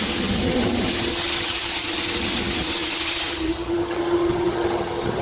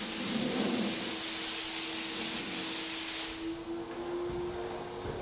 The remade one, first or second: first